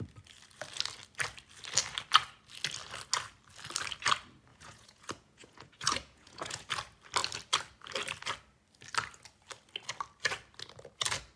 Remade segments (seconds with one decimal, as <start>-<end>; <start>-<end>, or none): 4.5-6.7